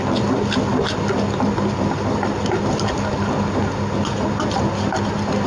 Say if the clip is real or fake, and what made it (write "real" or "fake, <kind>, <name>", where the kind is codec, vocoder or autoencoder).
real